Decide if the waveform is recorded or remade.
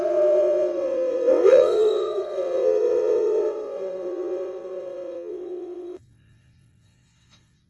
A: remade